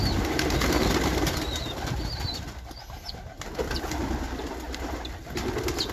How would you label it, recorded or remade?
recorded